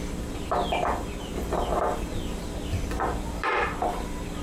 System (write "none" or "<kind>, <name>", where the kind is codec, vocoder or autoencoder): vocoder, BigVGAN v2